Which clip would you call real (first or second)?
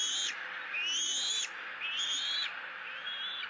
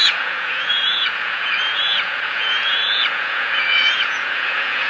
first